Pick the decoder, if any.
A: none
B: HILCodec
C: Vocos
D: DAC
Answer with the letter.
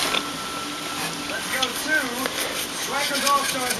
A